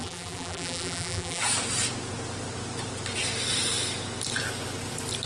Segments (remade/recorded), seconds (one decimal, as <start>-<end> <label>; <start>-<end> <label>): 0.0-1.4 remade; 1.4-5.3 recorded